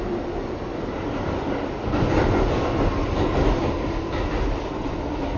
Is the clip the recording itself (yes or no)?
yes